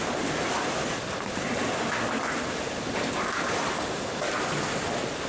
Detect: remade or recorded recorded